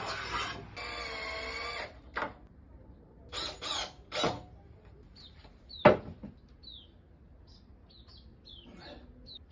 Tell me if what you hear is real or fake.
real